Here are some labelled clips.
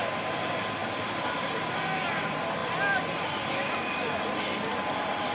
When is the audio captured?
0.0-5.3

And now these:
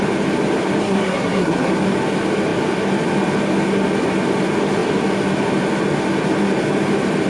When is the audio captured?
0.0-0.8; 1.7-7.3

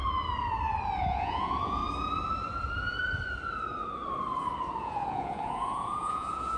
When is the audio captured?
0.0-1.0; 1.8-4.8

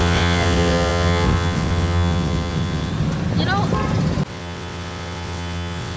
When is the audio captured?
2.9-4.3

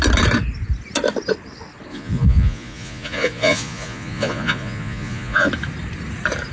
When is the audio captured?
0.0-1.9; 5.5-6.5

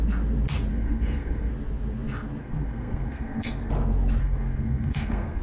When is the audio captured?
0.0-0.7; 1.5-2.4; 3.7-4.2

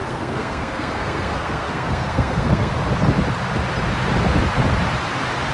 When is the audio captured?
2.7-5.5